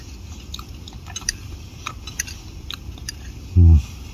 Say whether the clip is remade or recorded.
recorded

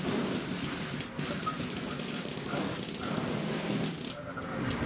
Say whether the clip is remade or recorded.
recorded